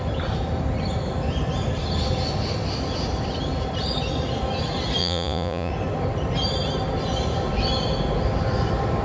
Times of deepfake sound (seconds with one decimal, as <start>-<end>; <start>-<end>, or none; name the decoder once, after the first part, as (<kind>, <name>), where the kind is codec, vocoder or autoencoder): 5.0-5.7 (vocoder, Vocos)